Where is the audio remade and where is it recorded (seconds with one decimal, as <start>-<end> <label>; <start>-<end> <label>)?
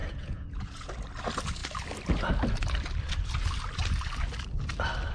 0.0-0.9 remade; 0.9-5.1 recorded